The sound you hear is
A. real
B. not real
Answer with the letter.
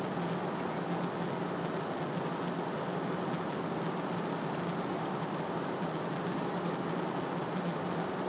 A